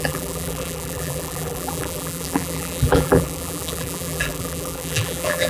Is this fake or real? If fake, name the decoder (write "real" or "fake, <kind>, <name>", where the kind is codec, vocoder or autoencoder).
fake, vocoder, BigVGAN v2